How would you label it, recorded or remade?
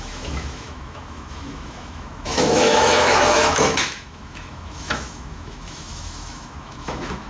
remade